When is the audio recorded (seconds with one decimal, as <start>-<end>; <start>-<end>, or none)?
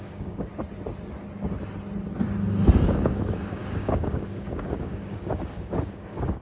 0.5-2.9